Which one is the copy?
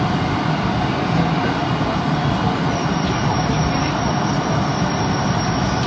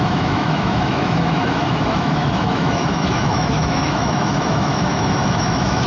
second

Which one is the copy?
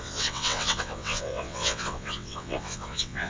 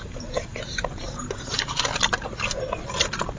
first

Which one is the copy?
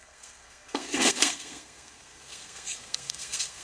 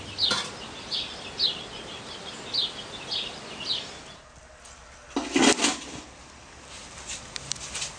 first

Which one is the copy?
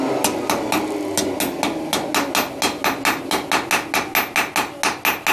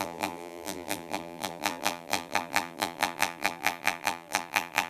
second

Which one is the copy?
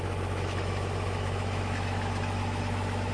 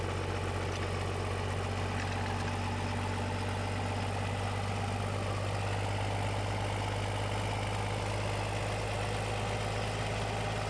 first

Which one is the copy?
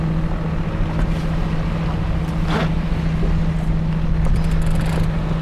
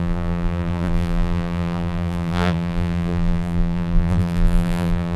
second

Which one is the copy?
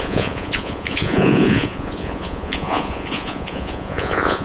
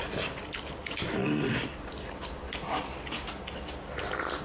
first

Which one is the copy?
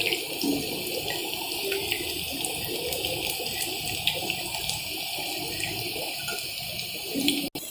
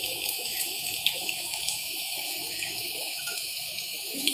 second